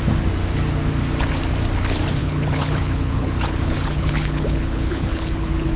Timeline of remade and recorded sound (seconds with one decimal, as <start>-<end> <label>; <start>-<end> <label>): 0.0-2.2 recorded; 2.2-5.8 remade